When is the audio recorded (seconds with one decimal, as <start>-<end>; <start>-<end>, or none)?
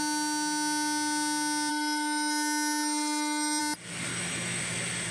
0.0-1.7; 3.6-4.1; 4.6-5.1